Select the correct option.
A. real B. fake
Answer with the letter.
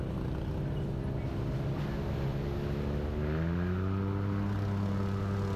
A